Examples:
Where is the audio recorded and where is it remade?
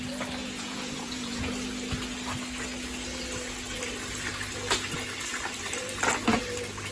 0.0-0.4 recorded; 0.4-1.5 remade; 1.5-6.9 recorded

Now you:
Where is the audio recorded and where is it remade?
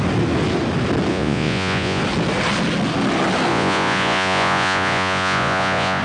0.0-1.1 recorded; 1.1-2.0 remade; 2.0-3.5 recorded; 3.5-6.0 remade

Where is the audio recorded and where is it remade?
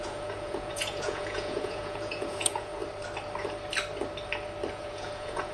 0.0-2.8 remade; 2.8-4.7 recorded; 4.7-5.5 remade